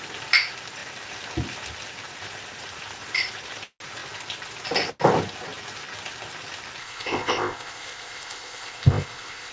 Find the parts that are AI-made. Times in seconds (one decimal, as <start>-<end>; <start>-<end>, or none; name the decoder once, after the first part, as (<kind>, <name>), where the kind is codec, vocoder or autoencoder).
6.8-9.5 (codec, ZipCodec)